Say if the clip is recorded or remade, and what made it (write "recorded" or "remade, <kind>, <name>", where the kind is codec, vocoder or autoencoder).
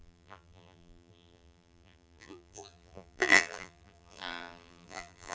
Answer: remade, vocoder, BigVGAN v2